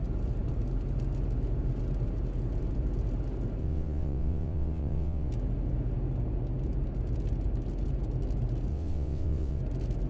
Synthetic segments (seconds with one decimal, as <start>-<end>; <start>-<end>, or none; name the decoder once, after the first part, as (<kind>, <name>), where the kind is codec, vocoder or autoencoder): 3.6-5.3 (vocoder, WaveNeXt); 8.7-9.6